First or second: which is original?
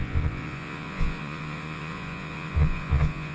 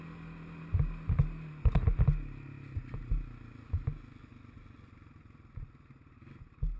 second